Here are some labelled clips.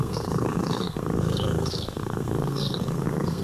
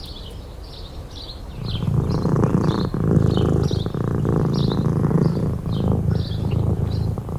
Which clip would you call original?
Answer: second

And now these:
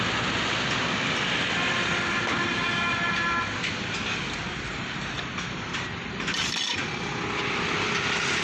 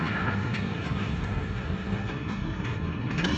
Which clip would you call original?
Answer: first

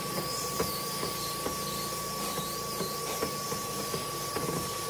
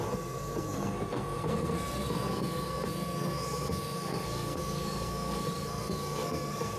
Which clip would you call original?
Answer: first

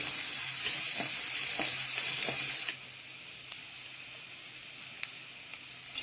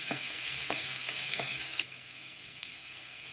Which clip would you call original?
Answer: first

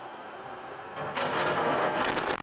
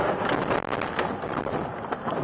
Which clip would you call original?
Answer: second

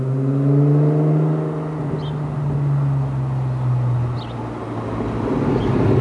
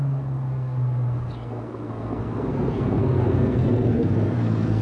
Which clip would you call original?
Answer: first